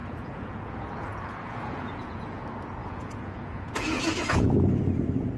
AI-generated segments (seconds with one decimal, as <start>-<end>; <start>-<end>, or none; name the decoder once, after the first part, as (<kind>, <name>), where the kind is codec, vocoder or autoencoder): 0.0-2.4 (vocoder, Vocos); 2.8-4.6